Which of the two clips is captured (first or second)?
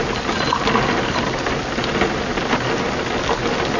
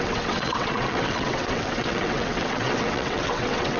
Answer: first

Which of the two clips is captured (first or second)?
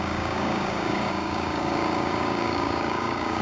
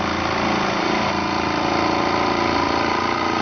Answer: second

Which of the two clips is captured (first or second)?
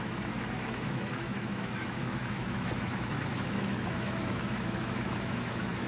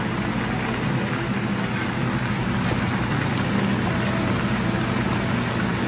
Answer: second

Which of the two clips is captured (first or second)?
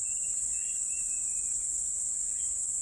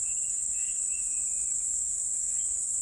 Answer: first